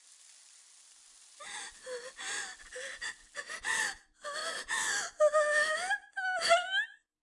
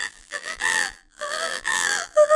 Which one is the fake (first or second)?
second